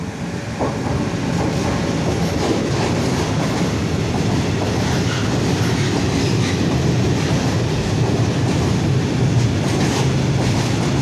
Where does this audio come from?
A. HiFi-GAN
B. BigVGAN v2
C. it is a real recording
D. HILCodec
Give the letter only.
C